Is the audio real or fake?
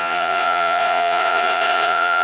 fake